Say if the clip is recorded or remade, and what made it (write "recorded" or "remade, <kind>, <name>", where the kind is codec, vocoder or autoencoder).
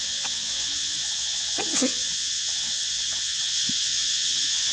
remade, vocoder, WaveNeXt